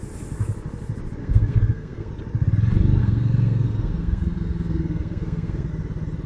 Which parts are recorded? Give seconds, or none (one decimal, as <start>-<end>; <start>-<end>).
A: 0.0-1.2; 2.1-3.0; 5.7-6.3